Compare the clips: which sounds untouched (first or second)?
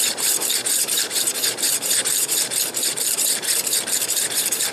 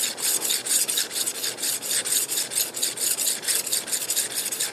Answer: second